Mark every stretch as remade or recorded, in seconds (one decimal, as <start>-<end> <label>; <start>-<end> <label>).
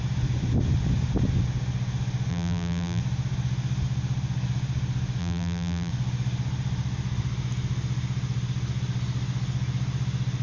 0.0-2.3 recorded; 2.3-3.0 remade; 3.0-5.2 recorded; 5.2-5.9 remade; 5.9-10.4 recorded